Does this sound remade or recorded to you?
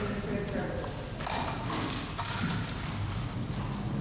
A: recorded